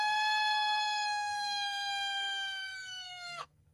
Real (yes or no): no